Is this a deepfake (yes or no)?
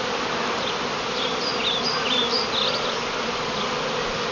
no